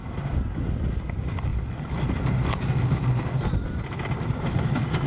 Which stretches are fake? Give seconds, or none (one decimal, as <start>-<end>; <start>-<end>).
1.5-3.8